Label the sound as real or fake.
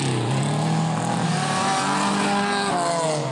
real